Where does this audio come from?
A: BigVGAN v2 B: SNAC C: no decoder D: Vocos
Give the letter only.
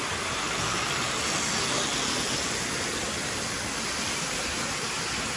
C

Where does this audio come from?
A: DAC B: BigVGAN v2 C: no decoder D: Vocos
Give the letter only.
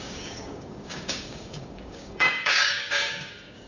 A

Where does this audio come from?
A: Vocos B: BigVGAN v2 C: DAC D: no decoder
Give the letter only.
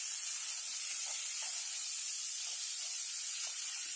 D